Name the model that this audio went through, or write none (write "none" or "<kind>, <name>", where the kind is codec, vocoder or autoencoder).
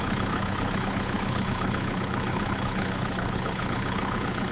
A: codec, HILCodec